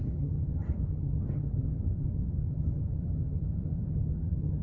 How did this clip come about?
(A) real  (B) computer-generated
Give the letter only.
B